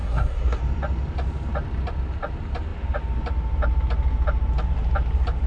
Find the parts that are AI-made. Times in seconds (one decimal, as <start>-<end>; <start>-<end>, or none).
0.0-0.6